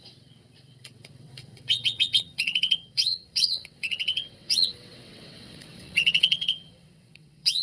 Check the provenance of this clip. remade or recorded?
remade